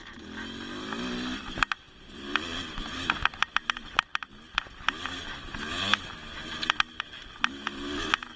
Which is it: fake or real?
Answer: real